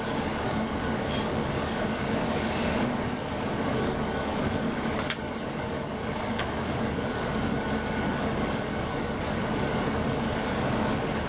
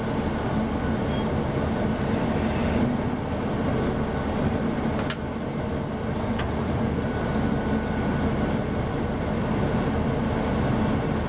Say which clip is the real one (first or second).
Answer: second